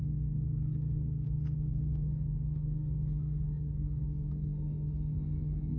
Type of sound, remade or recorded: remade